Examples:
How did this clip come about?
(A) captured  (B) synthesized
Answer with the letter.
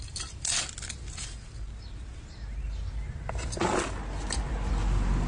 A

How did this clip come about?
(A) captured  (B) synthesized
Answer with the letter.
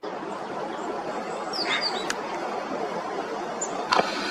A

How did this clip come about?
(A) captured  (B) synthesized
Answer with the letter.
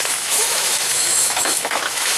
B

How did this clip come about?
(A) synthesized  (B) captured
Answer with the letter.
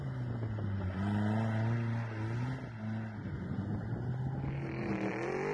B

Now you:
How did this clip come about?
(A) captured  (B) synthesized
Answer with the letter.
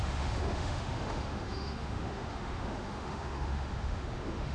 B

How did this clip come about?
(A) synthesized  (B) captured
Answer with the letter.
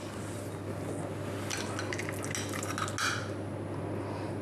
B